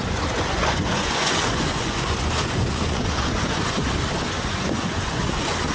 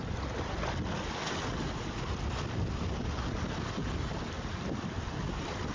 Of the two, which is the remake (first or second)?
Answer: first